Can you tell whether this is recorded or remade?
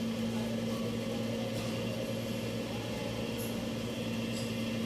recorded